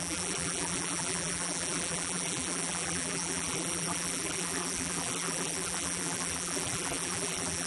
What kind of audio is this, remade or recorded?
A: remade